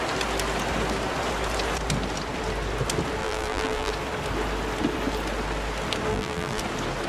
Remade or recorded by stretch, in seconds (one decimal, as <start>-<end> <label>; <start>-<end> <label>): 0.0-3.2 recorded; 3.2-3.9 remade; 3.9-6.1 recorded; 6.1-6.6 remade; 6.6-7.1 recorded